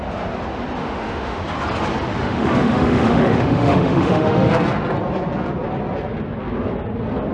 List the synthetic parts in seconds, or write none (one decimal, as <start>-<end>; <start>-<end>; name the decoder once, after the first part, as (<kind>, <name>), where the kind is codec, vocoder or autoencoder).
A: 0.8-1.4 (autoencoder, DAC-VAE); 2.2-4.5